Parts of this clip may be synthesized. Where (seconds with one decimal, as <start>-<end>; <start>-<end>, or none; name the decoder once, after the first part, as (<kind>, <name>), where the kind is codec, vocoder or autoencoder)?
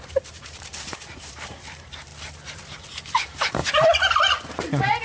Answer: 0.0-2.1 (vocoder, BigVGAN v2); 3.2-3.6